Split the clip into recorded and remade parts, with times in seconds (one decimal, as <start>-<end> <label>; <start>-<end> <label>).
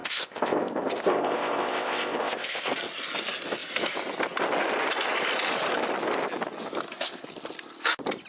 0.0-2.7 remade; 2.7-8.3 recorded